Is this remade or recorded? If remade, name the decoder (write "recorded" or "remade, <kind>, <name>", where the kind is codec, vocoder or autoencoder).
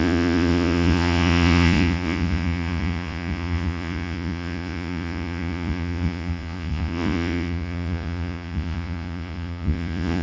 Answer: remade, vocoder, Vocos